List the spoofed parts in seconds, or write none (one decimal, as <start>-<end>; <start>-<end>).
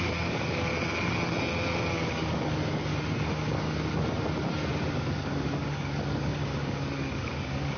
0.0-0.7; 1.9-2.9; 4.9-7.8